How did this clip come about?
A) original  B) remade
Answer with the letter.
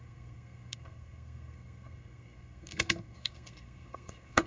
B